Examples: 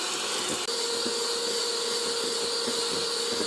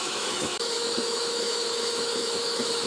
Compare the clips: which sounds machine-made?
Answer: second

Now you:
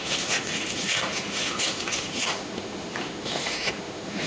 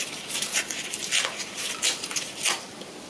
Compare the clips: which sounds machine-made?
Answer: first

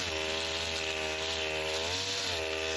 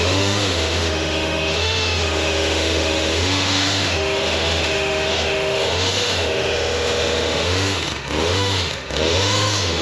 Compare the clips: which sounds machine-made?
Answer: second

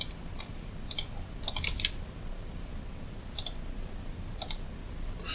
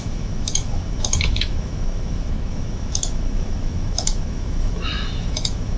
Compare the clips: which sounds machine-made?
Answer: second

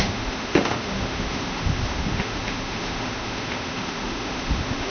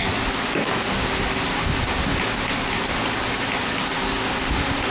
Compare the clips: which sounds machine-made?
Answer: first